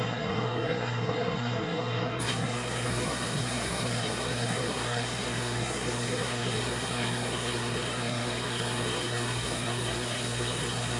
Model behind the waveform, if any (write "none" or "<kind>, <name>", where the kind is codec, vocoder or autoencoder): codec, SNAC